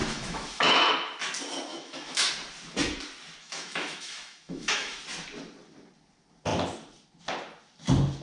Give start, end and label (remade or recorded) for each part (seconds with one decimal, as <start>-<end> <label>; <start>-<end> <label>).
0.0-0.9 remade; 0.9-1.7 recorded; 1.7-2.3 remade; 2.3-3.4 recorded; 3.4-5.0 remade; 5.0-8.2 recorded